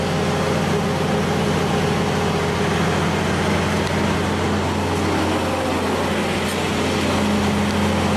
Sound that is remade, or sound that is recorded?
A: recorded